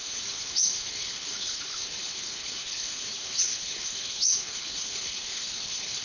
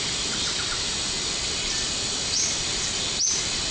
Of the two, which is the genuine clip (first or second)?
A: second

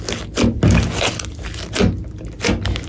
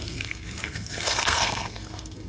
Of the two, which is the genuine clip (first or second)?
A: first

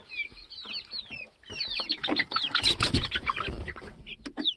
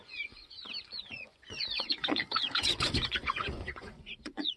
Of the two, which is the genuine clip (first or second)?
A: first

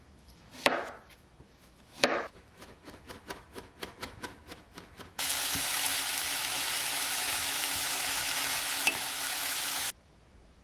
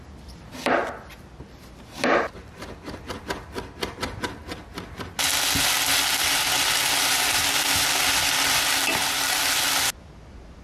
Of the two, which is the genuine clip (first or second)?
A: second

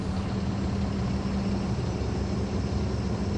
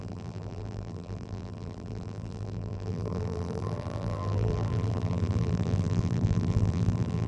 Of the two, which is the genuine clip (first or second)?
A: first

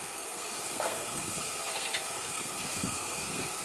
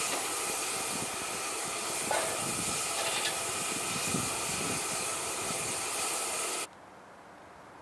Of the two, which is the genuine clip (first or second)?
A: second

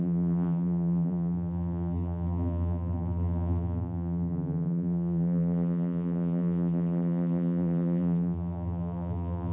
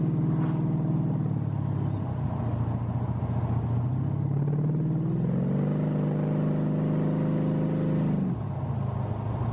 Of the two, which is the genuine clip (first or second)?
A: second